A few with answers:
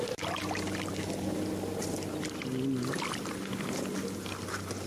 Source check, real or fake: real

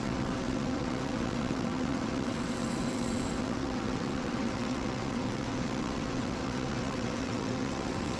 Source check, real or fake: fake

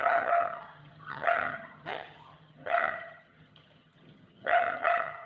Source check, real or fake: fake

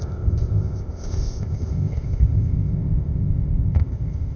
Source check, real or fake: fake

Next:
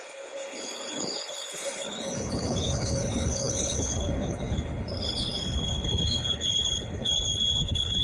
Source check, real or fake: fake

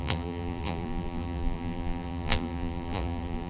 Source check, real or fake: fake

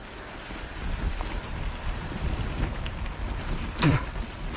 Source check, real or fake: real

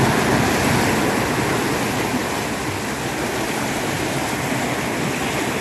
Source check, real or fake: real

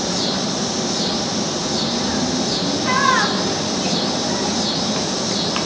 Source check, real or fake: real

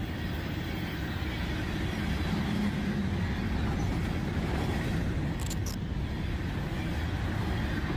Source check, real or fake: real